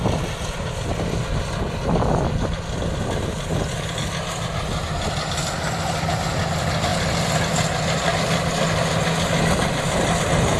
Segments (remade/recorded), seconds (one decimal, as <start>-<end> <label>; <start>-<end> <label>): 0.0-10.6 recorded